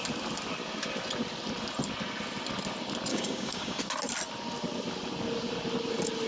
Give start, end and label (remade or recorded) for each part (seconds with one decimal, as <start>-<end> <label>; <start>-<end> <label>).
0.0-3.1 recorded; 3.1-3.8 remade; 3.8-6.3 recorded